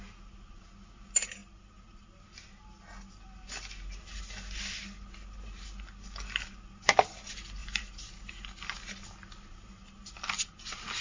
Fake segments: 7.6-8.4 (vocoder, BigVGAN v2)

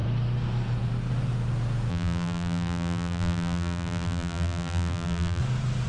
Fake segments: 1.9-5.4 (vocoder, BigVGAN v2)

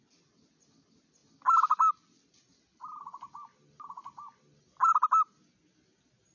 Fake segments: none

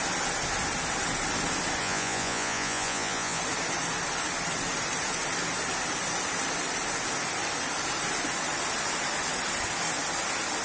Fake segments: 1.8-3.4 (vocoder, Vocos)